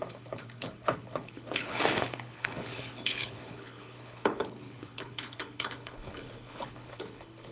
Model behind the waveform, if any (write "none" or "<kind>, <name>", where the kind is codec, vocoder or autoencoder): codec, HILCodec